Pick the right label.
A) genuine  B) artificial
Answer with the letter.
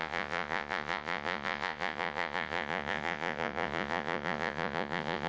B